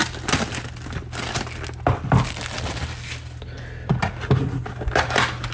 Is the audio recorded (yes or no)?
yes